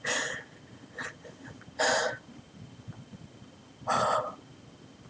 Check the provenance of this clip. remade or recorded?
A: recorded